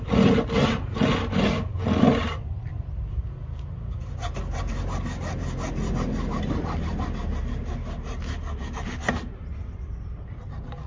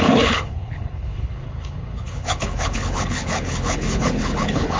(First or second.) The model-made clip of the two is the second